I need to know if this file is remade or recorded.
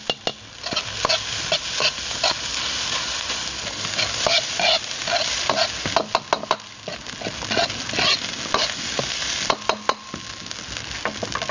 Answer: recorded